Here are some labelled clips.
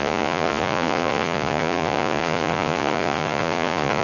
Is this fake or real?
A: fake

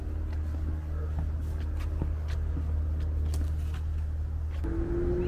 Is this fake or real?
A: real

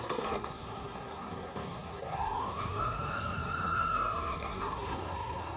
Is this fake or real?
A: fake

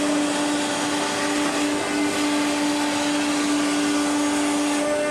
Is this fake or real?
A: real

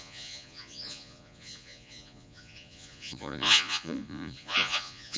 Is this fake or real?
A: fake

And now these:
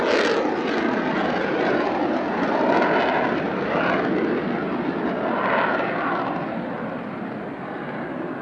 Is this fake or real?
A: real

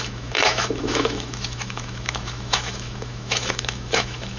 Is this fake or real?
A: fake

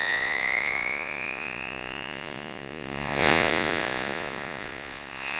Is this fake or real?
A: fake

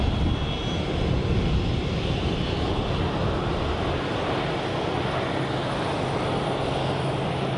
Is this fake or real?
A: real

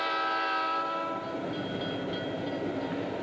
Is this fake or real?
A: real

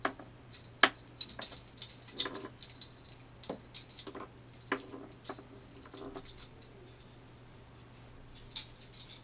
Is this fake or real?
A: real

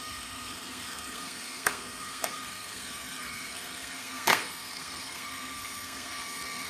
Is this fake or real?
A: fake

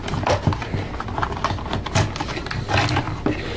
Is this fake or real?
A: real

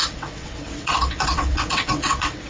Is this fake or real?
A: fake